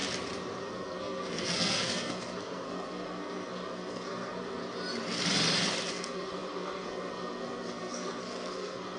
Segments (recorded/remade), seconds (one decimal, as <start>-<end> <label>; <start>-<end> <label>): 0.0-0.6 recorded; 0.6-4.6 remade; 4.6-5.9 recorded; 5.9-9.0 remade

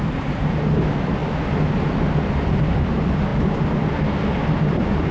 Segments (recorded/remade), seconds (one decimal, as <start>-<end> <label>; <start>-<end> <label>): 0.0-5.1 recorded